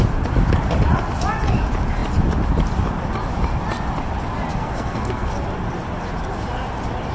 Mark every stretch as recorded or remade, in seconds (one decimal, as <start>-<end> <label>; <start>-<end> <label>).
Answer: 0.0-4.5 recorded; 4.5-5.3 remade; 5.3-7.1 recorded